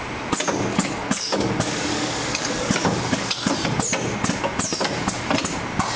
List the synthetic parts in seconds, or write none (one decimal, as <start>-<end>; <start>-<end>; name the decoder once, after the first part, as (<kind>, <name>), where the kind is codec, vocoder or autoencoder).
0.7-3.5 (codec, DAC)